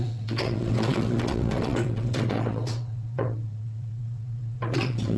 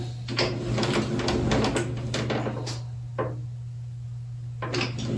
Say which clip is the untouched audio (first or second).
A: second